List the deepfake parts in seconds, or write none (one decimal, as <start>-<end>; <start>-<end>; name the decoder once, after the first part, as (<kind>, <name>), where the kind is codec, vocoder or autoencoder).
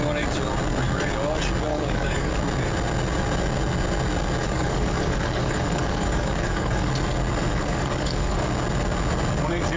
1.7-2.3 (codec, DAC); 4.4-6.9; 7.5-8.5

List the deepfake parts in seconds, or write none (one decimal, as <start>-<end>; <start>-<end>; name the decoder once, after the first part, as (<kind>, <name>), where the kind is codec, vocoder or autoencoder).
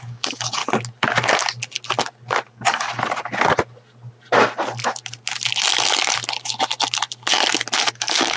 0.0-0.6 (codec, DAC); 2.5-2.9; 7.9-8.4